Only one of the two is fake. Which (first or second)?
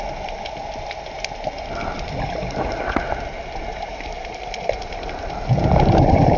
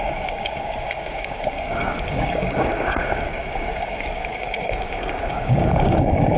second